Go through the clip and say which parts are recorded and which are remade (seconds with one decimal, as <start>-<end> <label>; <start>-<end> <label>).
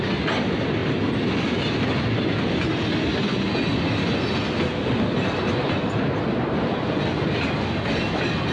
0.0-8.5 recorded